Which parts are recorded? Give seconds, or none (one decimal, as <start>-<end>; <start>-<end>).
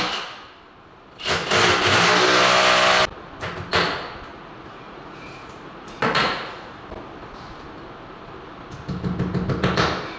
0.0-4.3; 6.8-10.2